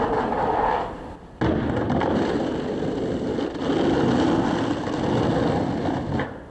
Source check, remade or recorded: recorded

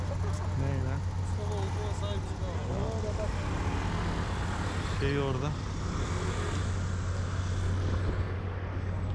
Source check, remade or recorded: recorded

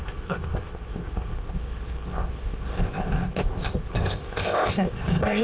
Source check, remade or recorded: remade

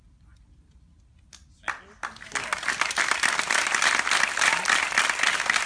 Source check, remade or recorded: recorded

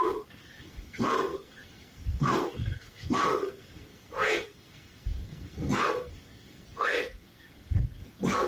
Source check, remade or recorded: remade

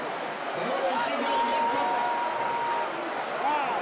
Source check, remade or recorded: recorded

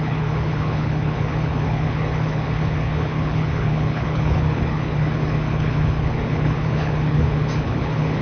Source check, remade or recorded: remade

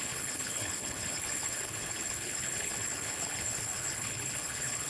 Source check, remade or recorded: remade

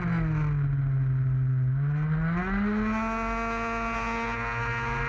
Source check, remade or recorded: recorded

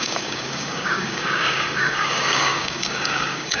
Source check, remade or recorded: remade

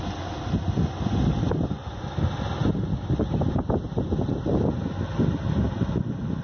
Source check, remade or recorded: recorded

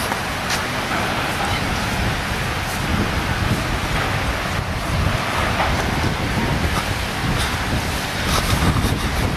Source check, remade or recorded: recorded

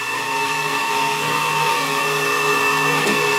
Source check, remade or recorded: remade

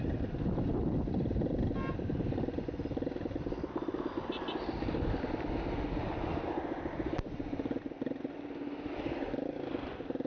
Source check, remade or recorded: recorded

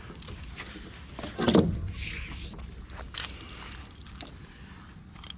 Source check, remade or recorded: recorded